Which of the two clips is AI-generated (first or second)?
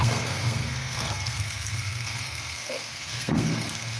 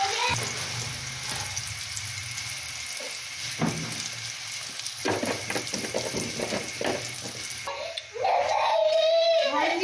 first